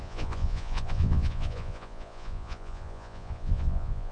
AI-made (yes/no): yes